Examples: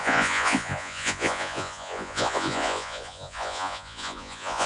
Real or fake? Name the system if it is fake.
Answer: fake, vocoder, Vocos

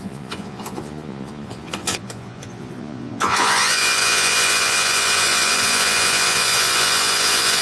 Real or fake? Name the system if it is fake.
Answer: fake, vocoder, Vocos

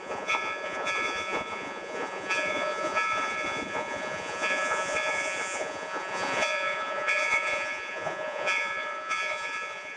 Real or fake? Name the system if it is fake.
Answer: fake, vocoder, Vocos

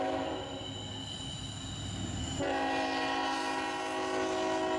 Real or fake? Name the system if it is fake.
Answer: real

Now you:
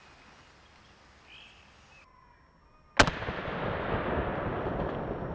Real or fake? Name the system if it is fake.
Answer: real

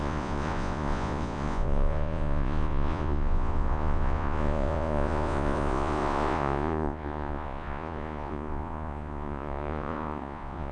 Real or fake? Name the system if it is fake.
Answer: fake, vocoder, Vocos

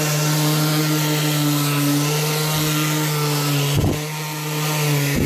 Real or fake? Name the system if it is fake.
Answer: real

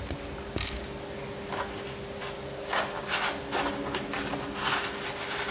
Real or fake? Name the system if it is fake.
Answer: real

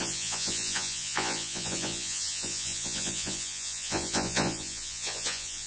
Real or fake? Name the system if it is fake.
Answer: fake, vocoder, Vocos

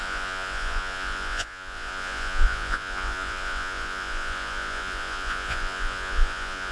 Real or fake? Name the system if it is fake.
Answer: fake, vocoder, Vocos